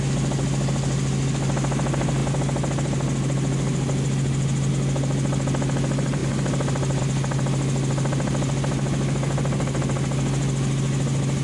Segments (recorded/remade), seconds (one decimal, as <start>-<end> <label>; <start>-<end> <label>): 0.0-11.4 recorded